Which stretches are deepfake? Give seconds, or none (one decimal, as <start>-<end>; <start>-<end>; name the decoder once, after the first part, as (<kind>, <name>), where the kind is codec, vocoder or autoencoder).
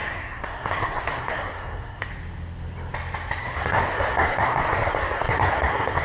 0.0-2.1 (codec, SNAC); 3.4-6.0